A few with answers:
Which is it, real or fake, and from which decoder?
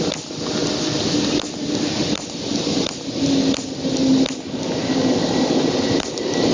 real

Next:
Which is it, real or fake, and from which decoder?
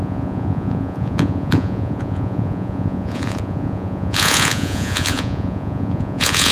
fake, vocoder, Vocos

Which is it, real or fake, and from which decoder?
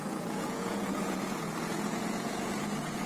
fake, vocoder, Vocos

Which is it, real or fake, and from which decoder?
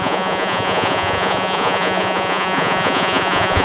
fake, vocoder, Vocos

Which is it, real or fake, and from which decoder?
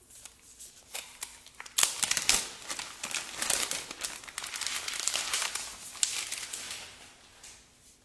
real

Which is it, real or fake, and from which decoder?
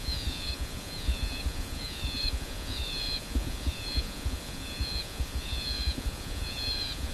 fake, vocoder, Vocos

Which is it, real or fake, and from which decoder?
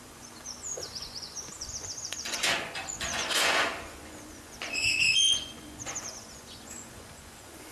fake, vocoder, Vocos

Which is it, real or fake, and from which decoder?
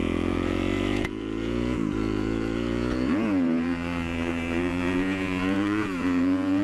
fake, vocoder, Vocos